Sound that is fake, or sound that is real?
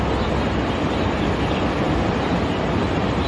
real